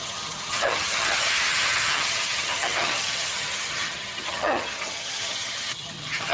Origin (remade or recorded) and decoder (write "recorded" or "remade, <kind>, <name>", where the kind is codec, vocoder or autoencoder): remade, vocoder, HiFi-GAN